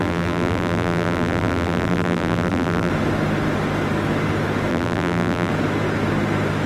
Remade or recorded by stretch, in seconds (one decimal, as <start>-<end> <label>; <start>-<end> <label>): 0.0-2.9 remade; 2.9-4.7 recorded; 4.7-5.5 remade; 5.5-6.7 recorded